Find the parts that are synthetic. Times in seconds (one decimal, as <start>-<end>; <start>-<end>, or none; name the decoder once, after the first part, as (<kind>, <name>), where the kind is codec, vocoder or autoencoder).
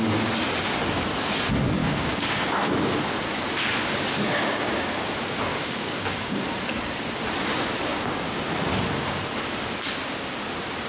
1.8-2.6 (codec, DAC); 4.3-5.1; 5.5-6.4; 7.9-8.4